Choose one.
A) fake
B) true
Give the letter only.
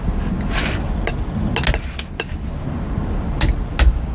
B